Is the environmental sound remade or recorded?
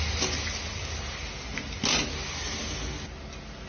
recorded